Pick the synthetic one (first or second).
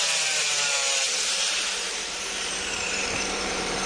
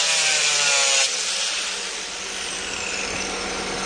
first